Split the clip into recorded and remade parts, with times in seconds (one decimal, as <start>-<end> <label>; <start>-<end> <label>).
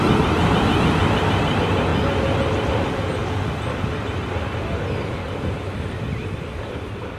0.0-1.9 remade; 1.9-2.7 recorded; 2.7-3.2 remade; 3.2-4.9 recorded; 4.9-7.2 remade